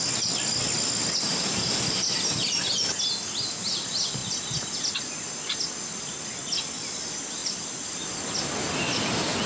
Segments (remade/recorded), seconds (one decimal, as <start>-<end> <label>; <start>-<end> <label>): 0.0-9.5 recorded